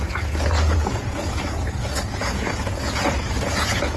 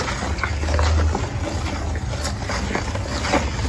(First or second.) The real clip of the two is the second